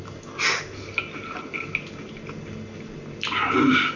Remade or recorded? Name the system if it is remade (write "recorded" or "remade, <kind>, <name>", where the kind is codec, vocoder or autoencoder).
recorded